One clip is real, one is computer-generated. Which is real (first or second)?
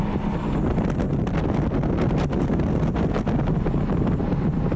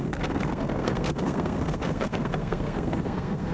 first